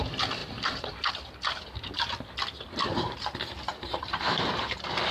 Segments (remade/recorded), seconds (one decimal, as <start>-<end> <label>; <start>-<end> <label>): 0.0-0.4 recorded; 0.4-1.1 remade; 1.1-2.8 recorded; 2.8-3.3 remade; 3.3-3.7 recorded; 3.7-4.5 remade; 4.5-5.1 recorded